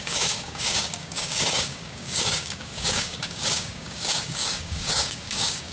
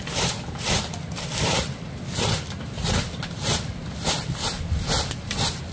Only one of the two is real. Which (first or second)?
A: second